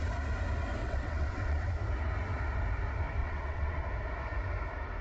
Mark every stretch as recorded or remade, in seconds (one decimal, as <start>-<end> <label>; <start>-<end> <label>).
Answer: 0.0-0.8 recorded; 0.8-1.7 remade; 1.7-3.2 recorded; 3.2-3.8 remade; 3.8-5.0 recorded